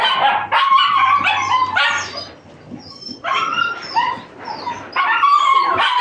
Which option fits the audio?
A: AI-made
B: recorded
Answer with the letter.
B